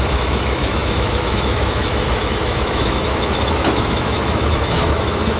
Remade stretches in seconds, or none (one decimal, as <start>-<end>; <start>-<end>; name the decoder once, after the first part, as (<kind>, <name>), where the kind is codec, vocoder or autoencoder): 0.0-5.4 (autoencoder, DAC-VAE)